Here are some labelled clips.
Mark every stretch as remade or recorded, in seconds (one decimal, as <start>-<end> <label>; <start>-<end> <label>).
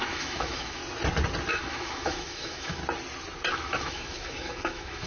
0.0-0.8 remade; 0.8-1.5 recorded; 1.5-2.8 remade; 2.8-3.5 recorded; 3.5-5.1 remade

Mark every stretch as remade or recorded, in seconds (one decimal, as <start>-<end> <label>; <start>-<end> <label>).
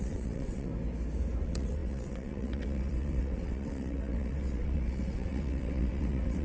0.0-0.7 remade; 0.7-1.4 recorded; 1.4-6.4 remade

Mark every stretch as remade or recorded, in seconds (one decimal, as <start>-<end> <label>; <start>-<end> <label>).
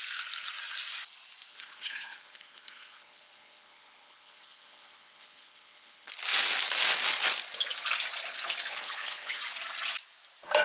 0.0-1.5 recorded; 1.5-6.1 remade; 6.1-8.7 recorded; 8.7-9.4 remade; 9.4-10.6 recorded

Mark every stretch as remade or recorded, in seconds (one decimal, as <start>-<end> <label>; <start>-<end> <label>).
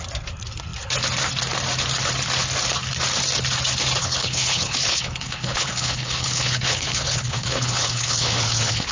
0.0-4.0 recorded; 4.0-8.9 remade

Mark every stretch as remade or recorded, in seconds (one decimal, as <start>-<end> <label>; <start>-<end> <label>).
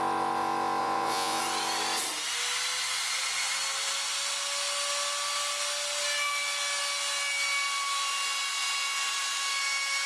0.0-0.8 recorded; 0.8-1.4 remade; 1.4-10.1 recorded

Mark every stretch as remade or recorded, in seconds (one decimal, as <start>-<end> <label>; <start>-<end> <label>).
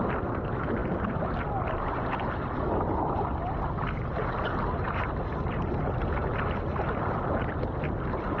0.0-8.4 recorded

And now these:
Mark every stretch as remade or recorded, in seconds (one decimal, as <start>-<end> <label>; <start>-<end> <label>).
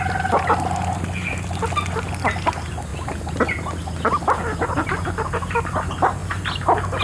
0.0-7.0 recorded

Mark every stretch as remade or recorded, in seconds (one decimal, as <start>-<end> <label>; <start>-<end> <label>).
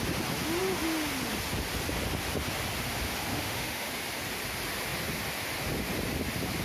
0.0-3.3 recorded; 3.3-3.9 remade; 3.9-6.6 recorded